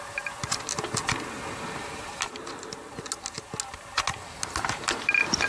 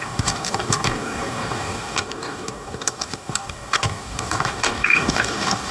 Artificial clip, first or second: second